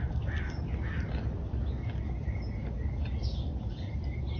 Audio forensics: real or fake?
real